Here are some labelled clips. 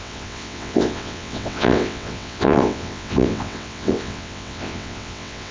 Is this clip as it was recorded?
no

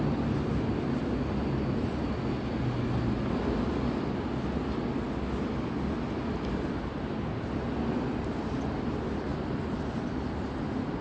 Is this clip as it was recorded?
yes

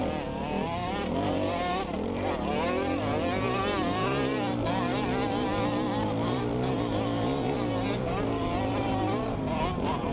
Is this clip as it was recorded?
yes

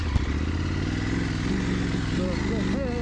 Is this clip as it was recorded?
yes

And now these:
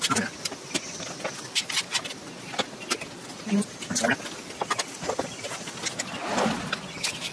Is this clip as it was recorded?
yes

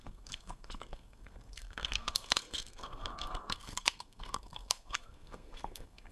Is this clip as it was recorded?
no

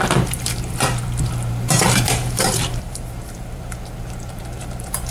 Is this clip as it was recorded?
no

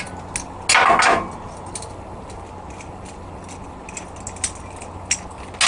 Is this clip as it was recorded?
yes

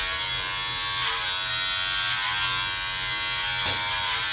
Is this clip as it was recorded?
yes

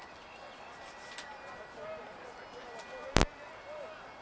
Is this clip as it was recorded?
yes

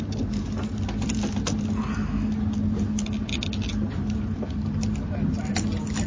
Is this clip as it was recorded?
yes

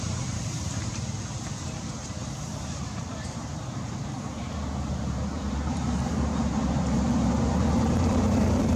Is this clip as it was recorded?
no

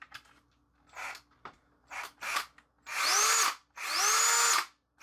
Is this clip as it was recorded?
yes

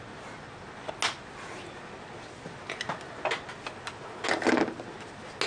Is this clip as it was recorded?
yes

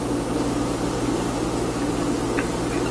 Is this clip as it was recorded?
yes